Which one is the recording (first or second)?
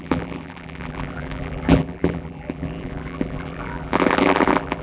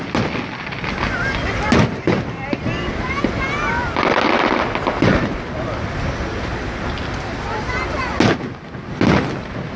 second